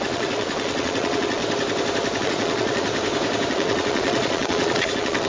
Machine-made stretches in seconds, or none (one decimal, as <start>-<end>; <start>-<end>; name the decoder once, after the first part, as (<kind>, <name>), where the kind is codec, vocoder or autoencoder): 0.0-1.4 (vocoder, Vocos); 2.2-2.9; 3.5-5.3